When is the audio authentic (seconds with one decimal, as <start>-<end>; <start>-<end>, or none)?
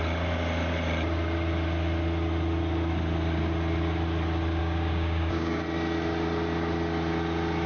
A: 0.0-4.6; 5.6-7.7